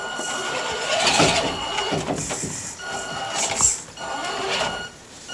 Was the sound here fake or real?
real